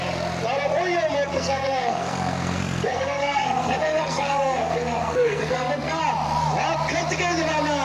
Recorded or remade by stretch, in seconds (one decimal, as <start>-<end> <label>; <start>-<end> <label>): 0.0-1.3 recorded; 1.3-6.0 remade; 6.0-7.8 recorded